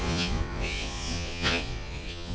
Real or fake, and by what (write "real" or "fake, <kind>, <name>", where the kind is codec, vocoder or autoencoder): fake, vocoder, Vocos